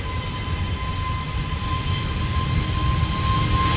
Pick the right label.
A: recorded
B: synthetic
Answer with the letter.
A